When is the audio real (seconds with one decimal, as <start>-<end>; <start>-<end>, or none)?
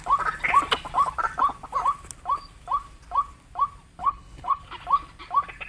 0.0-4.0; 4.6-5.7